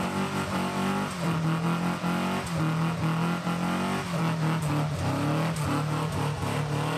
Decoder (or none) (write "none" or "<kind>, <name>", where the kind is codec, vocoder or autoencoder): none